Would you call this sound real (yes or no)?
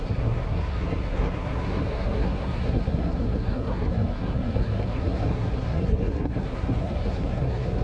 no